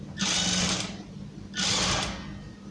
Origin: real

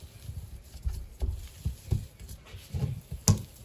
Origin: real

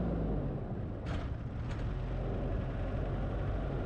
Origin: real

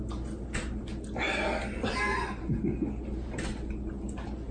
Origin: real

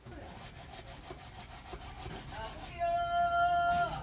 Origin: real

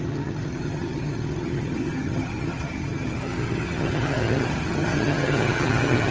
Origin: fake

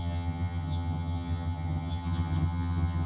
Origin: fake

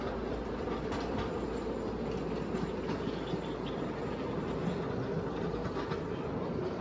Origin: real